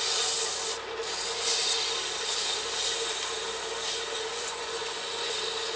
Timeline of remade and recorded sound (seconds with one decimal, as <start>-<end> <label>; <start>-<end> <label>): 0.0-4.3 recorded; 4.3-5.3 remade; 5.3-5.8 recorded